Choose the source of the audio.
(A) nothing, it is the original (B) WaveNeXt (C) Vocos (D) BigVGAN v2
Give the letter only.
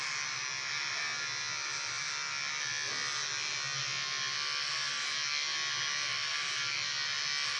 A